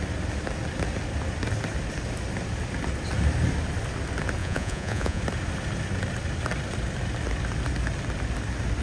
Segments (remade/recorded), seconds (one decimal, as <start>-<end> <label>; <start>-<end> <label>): 0.0-4.4 recorded; 4.4-5.2 remade; 5.2-8.8 recorded